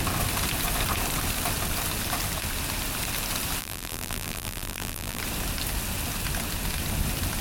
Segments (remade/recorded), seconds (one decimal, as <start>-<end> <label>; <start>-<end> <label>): 0.0-3.6 recorded; 3.6-5.2 remade; 5.2-7.4 recorded